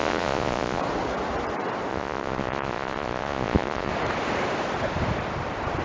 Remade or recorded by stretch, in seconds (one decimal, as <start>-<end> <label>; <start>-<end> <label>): 0.0-0.8 remade; 0.8-1.9 recorded; 1.9-3.9 remade; 3.9-5.8 recorded